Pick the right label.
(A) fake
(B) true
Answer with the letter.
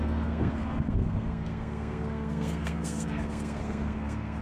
A